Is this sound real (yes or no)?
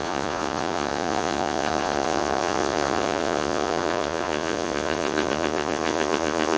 no